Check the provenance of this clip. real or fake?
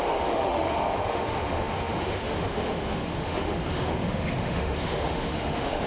fake